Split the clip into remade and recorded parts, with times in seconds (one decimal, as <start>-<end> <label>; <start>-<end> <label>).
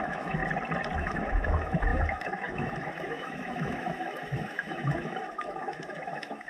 0.0-0.4 remade; 0.4-1.0 recorded; 1.0-6.5 remade